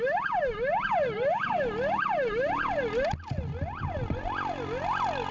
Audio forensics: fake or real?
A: real